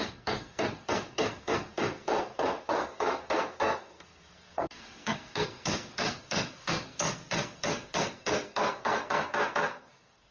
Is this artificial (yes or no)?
yes